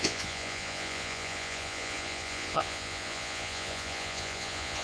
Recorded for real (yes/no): no